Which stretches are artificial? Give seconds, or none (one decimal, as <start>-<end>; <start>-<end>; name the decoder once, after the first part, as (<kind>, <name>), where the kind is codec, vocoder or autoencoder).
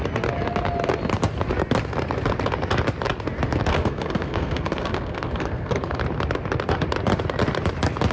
3.7-6.0 (codec, SNAC)